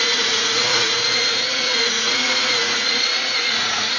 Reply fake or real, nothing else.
fake